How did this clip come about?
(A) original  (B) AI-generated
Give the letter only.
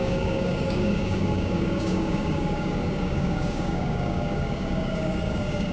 B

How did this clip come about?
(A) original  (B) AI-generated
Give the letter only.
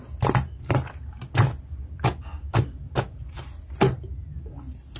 A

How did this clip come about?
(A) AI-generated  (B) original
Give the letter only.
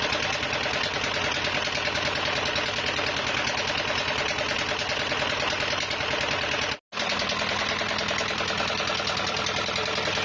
B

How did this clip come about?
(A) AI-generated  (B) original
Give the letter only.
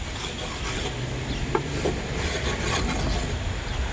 B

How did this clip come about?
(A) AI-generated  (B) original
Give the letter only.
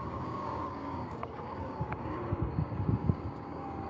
A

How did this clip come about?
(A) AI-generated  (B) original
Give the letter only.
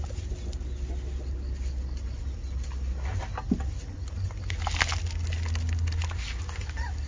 B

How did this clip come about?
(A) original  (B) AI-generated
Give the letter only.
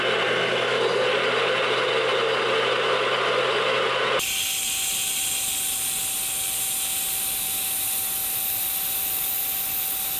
A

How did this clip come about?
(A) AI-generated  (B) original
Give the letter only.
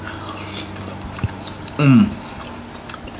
B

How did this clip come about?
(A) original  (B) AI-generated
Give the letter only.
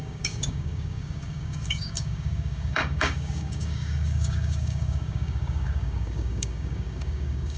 B